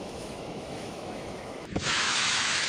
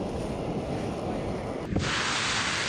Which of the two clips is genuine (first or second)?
second